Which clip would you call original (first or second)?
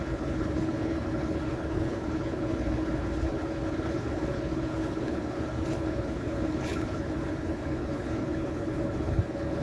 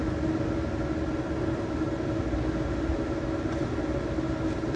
second